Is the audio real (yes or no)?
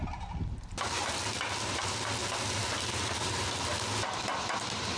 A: yes